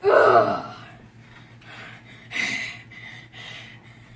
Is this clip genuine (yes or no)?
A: yes